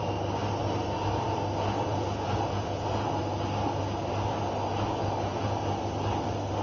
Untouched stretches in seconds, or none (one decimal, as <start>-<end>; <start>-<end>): 0.0-1.9; 3.2-6.6